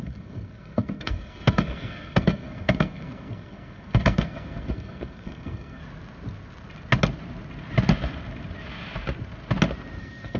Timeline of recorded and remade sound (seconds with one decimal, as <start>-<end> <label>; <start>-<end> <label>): 0.0-5.8 remade; 5.8-10.0 recorded; 10.0-10.4 remade